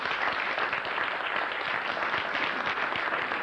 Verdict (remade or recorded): recorded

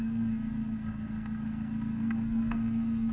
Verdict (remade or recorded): remade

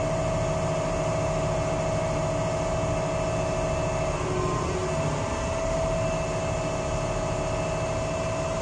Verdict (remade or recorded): recorded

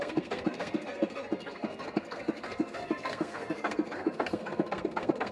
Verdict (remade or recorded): remade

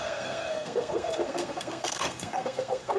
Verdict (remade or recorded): remade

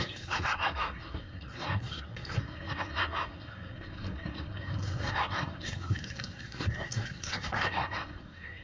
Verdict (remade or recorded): remade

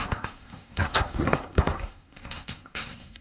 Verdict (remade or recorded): remade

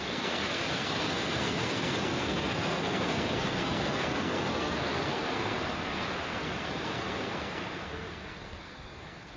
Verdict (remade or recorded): remade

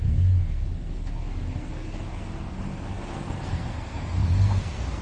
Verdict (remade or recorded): remade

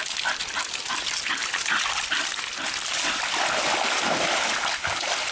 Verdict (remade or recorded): recorded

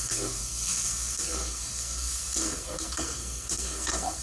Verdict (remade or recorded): remade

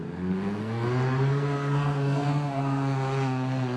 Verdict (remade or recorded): remade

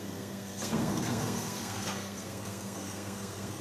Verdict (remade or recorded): remade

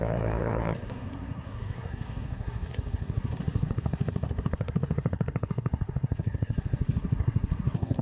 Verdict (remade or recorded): remade